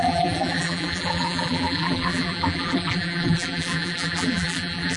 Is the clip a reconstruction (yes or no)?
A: yes